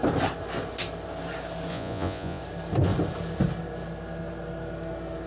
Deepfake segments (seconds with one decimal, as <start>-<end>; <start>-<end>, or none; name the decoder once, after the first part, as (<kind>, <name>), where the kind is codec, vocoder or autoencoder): 1.7-2.4 (vocoder, Vocos)